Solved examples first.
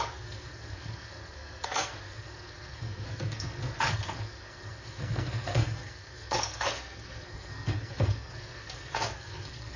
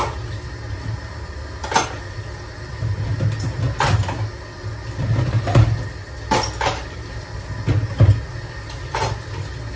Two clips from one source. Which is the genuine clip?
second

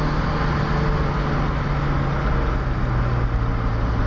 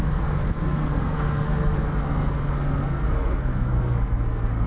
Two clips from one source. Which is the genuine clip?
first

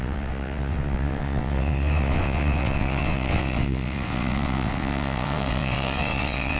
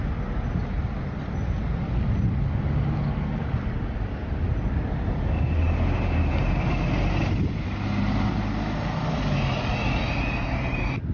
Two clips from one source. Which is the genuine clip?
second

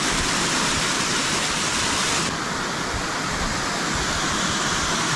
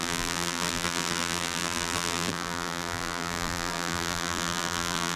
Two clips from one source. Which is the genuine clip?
first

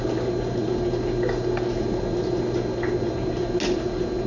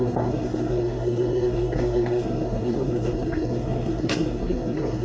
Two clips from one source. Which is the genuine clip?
first